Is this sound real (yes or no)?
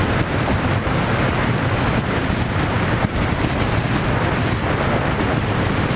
no